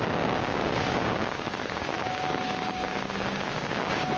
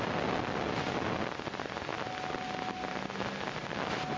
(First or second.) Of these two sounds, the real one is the second